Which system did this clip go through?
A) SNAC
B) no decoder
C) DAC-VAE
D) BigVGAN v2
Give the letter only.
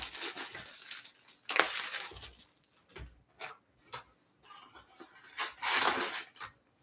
B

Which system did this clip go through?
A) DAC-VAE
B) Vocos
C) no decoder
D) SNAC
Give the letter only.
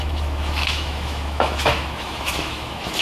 A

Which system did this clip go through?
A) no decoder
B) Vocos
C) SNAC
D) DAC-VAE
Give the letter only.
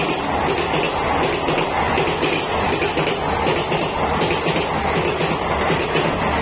A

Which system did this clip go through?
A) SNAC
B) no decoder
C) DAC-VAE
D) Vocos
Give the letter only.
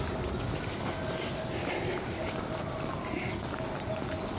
B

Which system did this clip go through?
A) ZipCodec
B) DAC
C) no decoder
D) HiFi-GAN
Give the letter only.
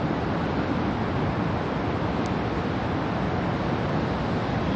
C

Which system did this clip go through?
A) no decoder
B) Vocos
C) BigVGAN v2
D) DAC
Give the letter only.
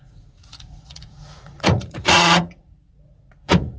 B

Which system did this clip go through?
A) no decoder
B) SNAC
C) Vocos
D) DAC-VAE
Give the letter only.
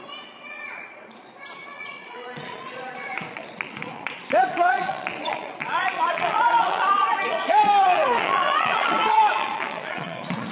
C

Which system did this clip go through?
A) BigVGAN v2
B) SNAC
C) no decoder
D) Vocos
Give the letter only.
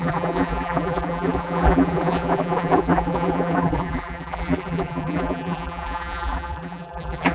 A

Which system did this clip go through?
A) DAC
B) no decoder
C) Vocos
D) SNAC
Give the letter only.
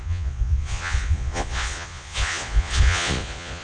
C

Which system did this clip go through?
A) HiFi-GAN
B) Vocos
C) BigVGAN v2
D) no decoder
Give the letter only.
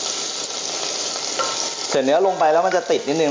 D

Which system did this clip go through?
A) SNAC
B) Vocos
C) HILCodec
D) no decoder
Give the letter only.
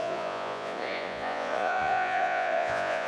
B